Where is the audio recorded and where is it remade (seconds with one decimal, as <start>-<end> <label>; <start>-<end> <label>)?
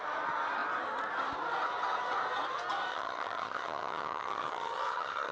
0.0-2.9 recorded; 2.9-5.3 remade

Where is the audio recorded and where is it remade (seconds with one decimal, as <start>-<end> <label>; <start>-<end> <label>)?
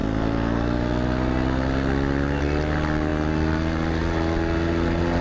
0.0-5.2 recorded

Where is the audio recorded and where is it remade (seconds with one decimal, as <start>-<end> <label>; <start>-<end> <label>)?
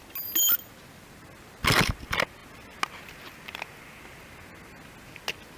0.0-5.6 recorded